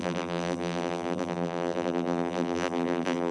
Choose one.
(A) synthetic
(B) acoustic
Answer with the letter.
A